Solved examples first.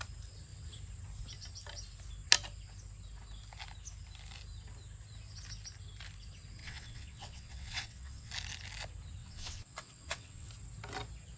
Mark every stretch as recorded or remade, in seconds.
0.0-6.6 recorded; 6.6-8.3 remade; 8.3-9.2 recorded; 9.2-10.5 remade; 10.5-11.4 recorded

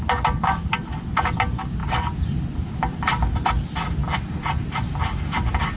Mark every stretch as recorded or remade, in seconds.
0.0-5.8 recorded

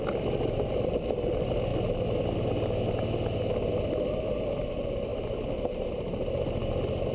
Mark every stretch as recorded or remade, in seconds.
0.0-7.1 recorded

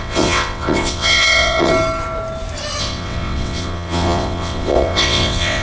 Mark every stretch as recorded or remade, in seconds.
0.0-1.7 remade; 1.7-2.8 recorded; 2.8-5.6 remade

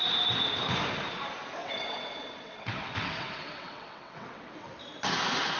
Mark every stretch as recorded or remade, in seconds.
0.0-1.6 recorded; 1.6-4.7 remade; 4.7-5.6 recorded